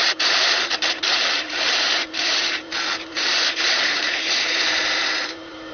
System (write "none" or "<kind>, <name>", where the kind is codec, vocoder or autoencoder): vocoder, BigVGAN v2